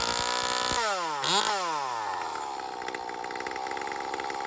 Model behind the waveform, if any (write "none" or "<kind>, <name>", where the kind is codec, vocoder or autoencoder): none